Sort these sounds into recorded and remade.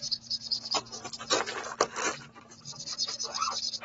recorded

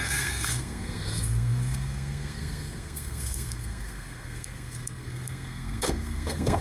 remade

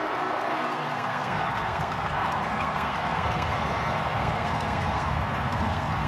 remade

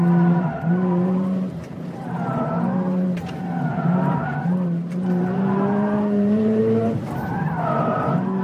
remade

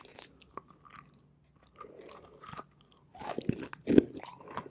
recorded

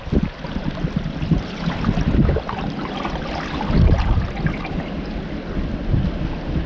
recorded